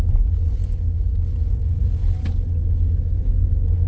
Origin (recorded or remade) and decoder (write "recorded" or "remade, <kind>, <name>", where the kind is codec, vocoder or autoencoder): recorded